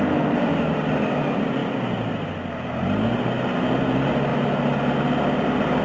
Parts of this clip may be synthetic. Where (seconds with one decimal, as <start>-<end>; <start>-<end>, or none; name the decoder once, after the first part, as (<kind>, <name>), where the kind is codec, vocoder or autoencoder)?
none